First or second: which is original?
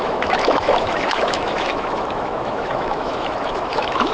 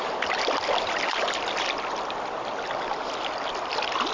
second